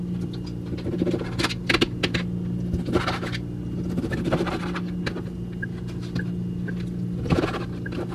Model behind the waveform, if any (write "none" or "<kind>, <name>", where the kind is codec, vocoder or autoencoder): none